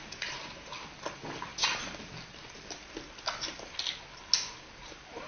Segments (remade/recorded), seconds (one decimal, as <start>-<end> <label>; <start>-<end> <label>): 0.0-5.3 recorded